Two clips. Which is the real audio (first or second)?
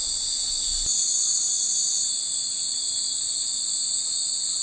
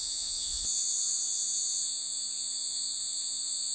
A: first